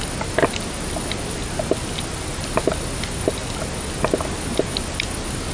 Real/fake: real